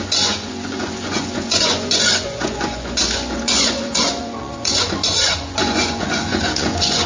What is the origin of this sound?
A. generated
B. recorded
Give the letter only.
A